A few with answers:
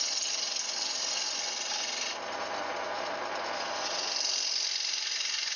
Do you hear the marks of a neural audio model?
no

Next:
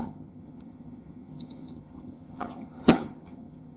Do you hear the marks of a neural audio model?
yes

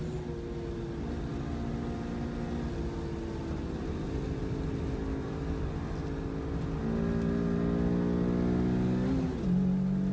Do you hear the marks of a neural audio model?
no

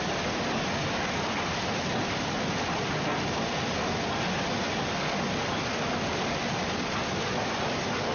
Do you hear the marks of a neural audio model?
no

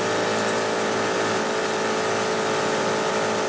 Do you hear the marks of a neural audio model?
no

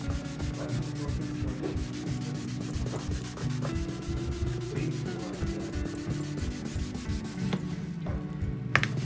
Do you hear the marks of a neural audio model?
no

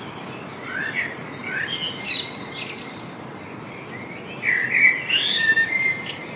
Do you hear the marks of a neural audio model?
no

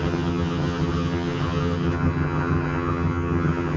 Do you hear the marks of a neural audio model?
yes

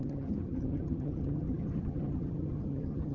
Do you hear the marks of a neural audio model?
yes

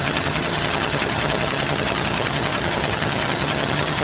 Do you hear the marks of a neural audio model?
yes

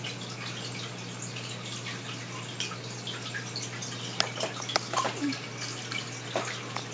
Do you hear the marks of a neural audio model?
no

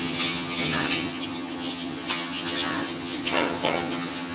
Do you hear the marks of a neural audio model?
yes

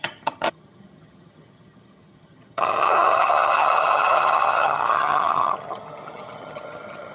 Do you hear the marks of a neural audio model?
yes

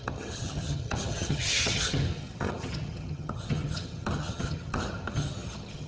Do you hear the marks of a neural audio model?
yes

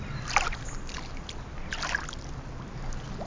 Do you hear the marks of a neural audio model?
no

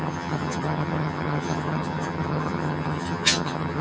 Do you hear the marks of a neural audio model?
yes